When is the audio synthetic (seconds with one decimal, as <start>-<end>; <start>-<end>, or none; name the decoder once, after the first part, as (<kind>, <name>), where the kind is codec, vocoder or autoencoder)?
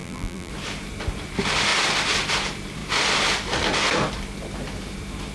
0.0-0.5 (vocoder, BigVGAN v2)